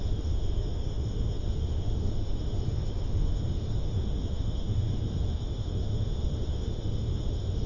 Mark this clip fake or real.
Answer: fake